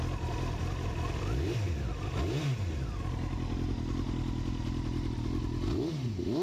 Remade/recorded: recorded